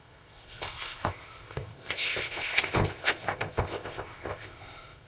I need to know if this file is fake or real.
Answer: fake